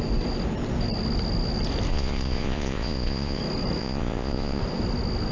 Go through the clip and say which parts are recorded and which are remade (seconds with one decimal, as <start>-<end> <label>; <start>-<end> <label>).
0.0-1.9 recorded; 1.9-3.4 remade; 3.4-3.8 recorded; 3.8-4.6 remade; 4.6-5.3 recorded